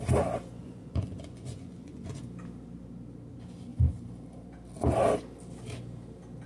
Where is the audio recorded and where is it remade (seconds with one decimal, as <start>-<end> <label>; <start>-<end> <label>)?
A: 0.0-0.6 recorded; 0.6-2.2 remade; 2.2-6.5 recorded